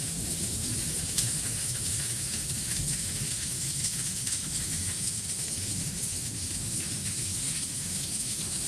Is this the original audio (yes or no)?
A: no